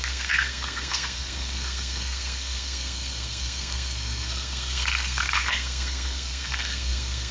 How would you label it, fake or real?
fake